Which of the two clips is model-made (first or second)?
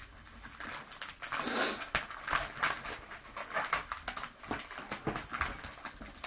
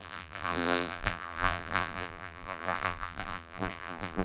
second